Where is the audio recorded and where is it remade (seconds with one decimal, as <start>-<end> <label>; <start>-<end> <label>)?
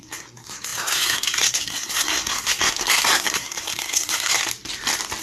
0.0-4.4 remade; 4.4-5.2 recorded